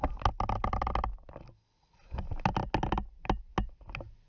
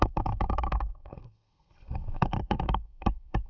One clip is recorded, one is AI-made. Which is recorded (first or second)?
first